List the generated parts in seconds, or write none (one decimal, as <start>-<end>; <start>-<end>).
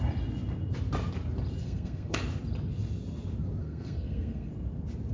1.6-2.2; 3.6-4.5